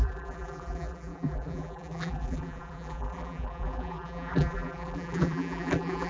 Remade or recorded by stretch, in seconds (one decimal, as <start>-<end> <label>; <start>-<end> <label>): 0.0-6.1 remade